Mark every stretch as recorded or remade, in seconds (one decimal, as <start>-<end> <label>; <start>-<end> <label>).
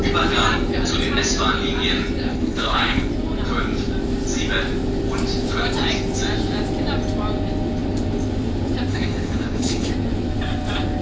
0.0-2.3 recorded; 2.3-3.1 remade; 3.1-8.9 recorded; 8.9-9.9 remade; 9.9-11.0 recorded